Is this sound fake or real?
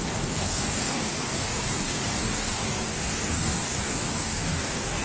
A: fake